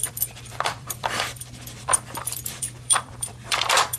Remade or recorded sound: remade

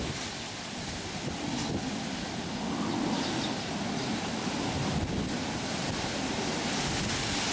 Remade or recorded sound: recorded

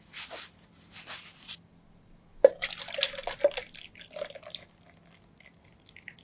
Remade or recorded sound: recorded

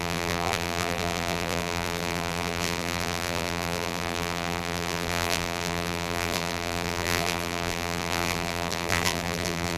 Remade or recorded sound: remade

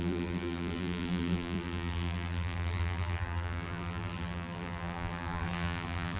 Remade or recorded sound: remade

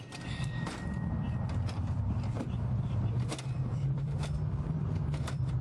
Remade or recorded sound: remade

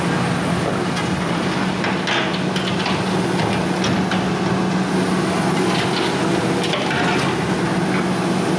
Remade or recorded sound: recorded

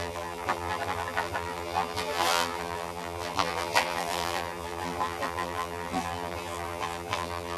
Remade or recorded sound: remade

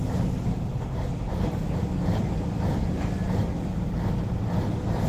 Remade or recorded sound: recorded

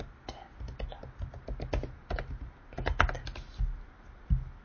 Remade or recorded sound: recorded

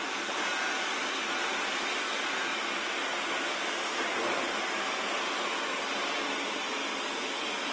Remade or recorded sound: recorded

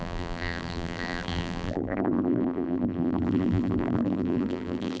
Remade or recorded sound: remade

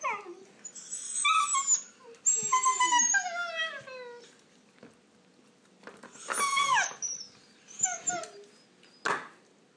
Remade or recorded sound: recorded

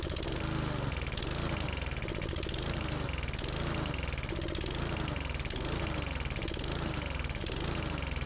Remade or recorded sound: recorded